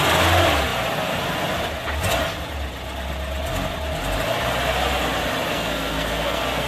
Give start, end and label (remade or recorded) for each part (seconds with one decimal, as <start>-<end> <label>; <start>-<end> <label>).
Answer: 0.0-5.5 recorded; 5.5-6.7 remade